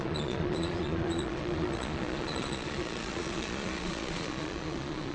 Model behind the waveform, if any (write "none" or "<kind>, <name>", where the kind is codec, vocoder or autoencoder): vocoder, Vocos